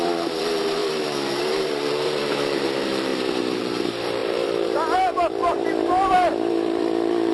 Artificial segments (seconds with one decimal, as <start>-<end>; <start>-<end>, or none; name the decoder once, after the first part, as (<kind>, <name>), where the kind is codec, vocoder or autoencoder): 0.0-3.1 (vocoder, BigVGAN v2); 3.6-7.3